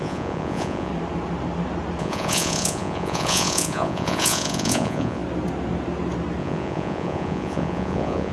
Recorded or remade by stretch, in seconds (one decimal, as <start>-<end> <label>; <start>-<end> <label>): 0.0-0.9 remade; 0.9-2.0 recorded; 2.0-5.2 remade; 5.2-6.4 recorded; 6.4-8.3 remade

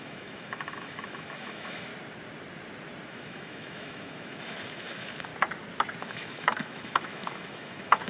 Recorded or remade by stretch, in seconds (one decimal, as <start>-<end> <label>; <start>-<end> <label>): 0.0-1.9 remade; 1.9-3.1 recorded; 3.1-5.3 remade; 5.3-6.0 recorded; 6.0-8.1 remade